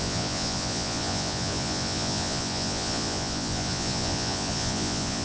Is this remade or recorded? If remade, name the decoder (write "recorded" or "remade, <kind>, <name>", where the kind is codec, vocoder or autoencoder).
remade, vocoder, Vocos